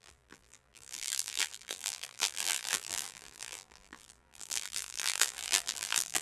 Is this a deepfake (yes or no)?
yes